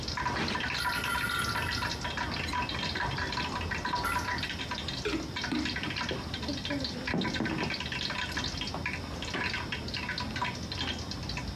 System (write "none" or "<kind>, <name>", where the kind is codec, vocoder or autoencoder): none